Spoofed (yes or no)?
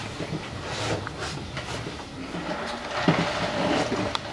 yes